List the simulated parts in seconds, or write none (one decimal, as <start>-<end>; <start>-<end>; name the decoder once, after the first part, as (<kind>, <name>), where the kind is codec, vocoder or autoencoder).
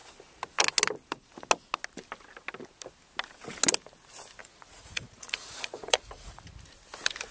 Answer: 4.4-6.5 (vocoder, Vocos)